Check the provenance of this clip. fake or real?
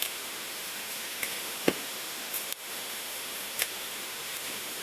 fake